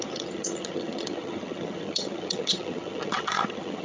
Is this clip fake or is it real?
fake